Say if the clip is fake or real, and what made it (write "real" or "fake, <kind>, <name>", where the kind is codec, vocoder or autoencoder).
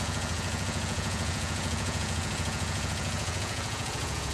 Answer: fake, vocoder, Vocos